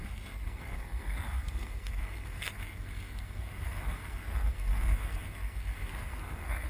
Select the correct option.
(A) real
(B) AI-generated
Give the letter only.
B